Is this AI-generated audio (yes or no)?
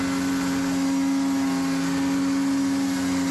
no